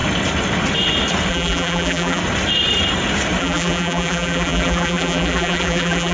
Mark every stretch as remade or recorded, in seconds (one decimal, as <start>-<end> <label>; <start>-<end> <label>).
0.0-1.3 recorded; 1.3-2.2 remade; 2.2-3.4 recorded; 3.4-6.1 remade

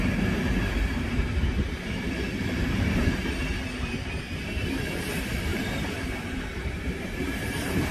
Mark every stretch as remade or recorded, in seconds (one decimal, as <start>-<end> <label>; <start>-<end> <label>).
0.0-0.7 recorded; 0.7-3.2 remade; 3.2-5.5 recorded; 5.5-7.9 remade

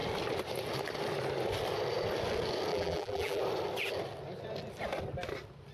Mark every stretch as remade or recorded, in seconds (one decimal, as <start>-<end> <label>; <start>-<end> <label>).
0.0-2.7 recorded; 2.7-3.4 remade; 3.4-5.7 recorded

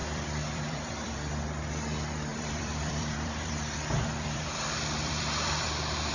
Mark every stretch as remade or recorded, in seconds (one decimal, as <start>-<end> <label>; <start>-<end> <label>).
0.0-1.3 remade; 1.3-2.3 recorded; 2.3-6.1 remade

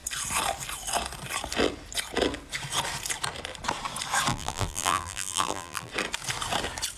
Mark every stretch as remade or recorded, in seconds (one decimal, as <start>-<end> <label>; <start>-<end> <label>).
0.0-4.3 recorded; 4.3-5.9 remade; 5.9-7.0 recorded

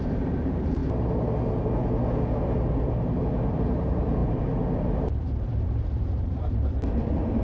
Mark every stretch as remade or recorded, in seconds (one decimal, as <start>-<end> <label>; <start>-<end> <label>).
0.0-0.8 remade; 0.8-3.5 recorded; 3.5-7.4 remade